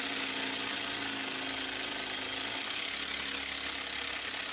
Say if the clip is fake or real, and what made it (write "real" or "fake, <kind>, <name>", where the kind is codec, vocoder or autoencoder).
real